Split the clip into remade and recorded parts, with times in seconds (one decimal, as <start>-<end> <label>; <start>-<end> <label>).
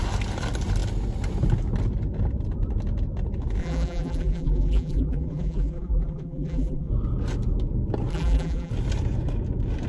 0.0-3.6 recorded; 3.6-6.9 remade; 6.9-8.1 recorded; 8.1-8.7 remade; 8.7-9.9 recorded